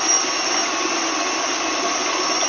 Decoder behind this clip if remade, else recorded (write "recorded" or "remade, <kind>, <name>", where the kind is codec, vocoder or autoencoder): recorded